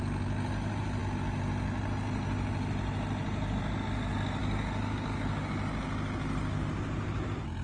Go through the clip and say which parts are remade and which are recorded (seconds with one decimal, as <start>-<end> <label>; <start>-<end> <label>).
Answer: 0.0-4.4 recorded; 4.4-5.5 remade; 5.5-7.6 recorded